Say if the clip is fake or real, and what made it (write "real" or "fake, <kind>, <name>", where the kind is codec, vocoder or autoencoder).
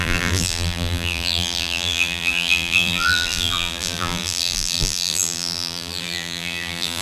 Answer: fake, vocoder, BigVGAN v2